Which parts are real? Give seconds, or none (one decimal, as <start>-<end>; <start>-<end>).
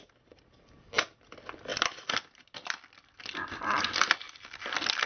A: 0.0-5.1